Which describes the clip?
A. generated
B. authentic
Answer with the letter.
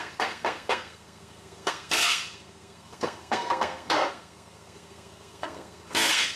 A